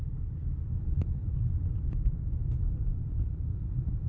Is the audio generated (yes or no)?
yes